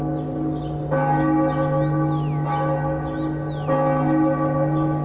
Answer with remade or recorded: recorded